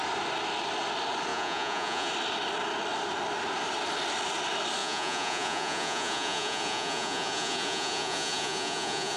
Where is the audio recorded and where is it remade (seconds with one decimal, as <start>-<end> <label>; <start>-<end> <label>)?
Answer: 0.0-1.3 recorded; 1.3-2.1 remade; 2.1-4.8 recorded; 4.8-9.2 remade